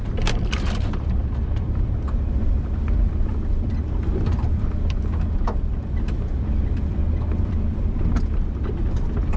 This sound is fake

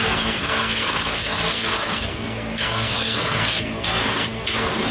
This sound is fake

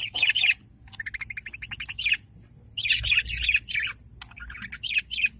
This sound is real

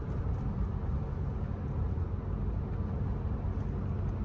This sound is real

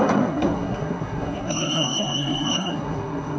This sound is fake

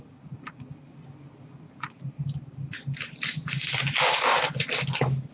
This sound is real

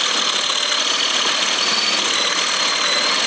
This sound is real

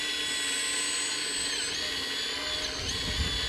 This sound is real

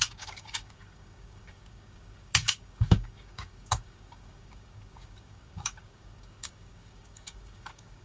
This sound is fake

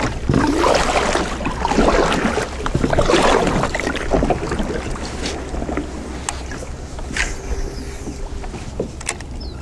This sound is real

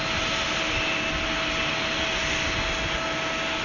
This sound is real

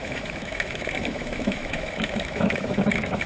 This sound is fake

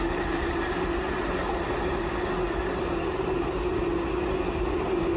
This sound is real